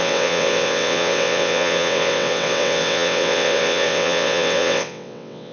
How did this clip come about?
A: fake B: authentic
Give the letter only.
A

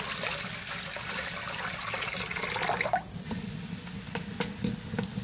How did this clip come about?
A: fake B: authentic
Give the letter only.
B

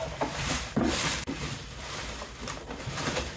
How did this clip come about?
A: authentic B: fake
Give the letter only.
B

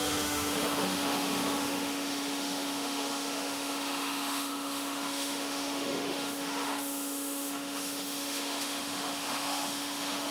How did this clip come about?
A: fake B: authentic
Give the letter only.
A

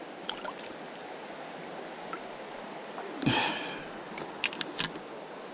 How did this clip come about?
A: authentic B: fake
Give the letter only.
A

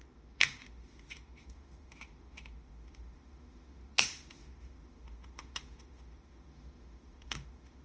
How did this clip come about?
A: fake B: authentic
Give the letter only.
A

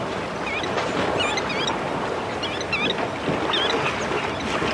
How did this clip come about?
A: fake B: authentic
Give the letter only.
B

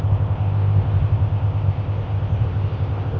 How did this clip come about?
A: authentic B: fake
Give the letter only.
B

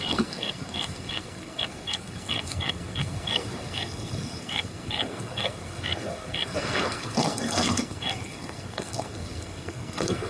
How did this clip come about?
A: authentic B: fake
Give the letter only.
B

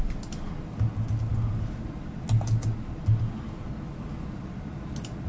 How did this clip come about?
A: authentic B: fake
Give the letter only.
A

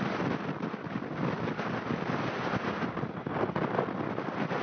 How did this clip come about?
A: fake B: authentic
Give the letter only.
B